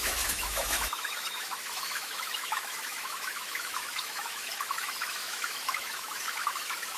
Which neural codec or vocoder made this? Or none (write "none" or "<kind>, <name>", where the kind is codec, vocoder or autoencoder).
autoencoder, DAC-VAE